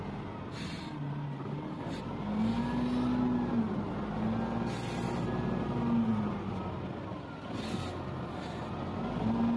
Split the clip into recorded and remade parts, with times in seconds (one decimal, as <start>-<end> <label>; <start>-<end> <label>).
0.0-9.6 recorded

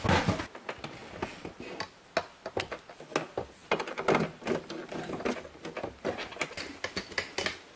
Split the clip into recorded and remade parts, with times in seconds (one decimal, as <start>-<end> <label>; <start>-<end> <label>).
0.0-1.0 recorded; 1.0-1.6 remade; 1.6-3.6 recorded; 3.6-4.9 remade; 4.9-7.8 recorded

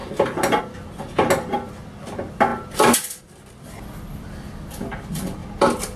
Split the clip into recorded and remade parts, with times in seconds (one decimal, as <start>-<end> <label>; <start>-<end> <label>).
0.0-6.0 recorded